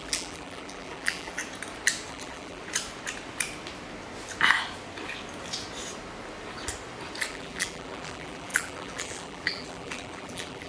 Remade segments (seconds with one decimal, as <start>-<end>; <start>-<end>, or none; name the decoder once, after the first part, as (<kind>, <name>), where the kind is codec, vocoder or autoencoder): 0.0-1.4 (vocoder, BigVGAN v2); 2.1-2.6; 7.3-10.7